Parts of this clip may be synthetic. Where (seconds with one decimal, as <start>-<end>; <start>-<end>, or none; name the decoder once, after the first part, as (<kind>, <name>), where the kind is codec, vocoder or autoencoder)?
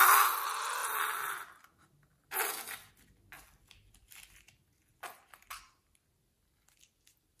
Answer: none